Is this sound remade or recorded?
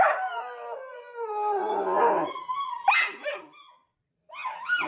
recorded